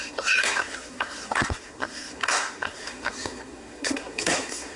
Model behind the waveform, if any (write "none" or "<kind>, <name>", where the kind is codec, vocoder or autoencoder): codec, SNAC